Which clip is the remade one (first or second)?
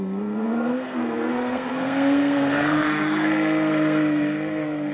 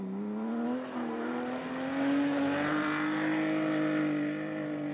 first